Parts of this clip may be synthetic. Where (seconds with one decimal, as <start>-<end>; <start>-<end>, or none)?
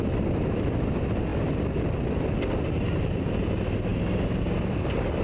none